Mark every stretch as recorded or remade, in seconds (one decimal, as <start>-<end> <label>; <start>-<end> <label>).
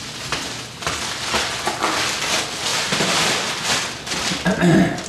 0.0-5.1 recorded